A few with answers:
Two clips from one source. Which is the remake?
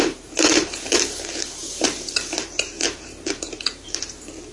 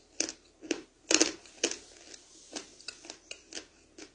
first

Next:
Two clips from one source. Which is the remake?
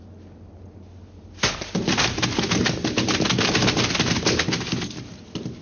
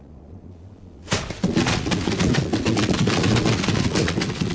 second